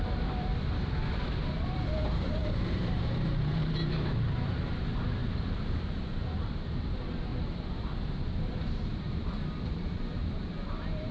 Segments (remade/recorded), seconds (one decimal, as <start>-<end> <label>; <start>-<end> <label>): 0.0-7.3 remade; 7.3-8.2 recorded; 8.2-8.9 remade; 8.9-9.8 recorded; 9.8-11.1 remade